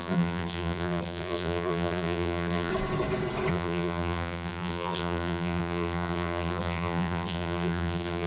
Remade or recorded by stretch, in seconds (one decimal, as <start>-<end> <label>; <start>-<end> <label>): 0.0-2.7 remade; 2.7-3.5 recorded; 3.5-8.3 remade